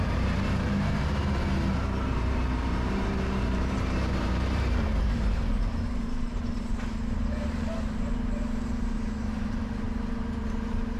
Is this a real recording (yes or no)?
no